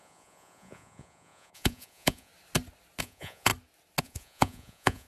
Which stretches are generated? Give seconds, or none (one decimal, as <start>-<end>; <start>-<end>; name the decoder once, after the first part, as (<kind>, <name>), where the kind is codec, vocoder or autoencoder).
0.0-2.3 (vocoder, Vocos); 3.0-3.5; 4.0-5.1